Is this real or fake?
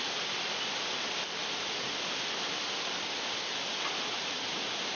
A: real